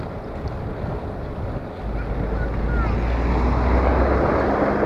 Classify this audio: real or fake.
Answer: real